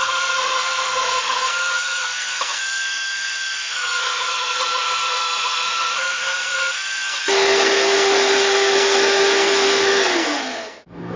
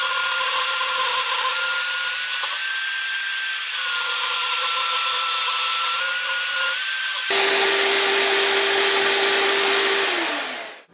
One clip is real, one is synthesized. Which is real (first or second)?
second